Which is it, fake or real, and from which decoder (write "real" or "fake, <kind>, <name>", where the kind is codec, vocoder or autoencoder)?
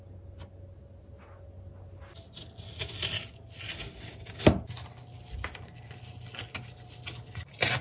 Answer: real